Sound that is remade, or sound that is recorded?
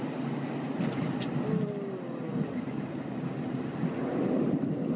recorded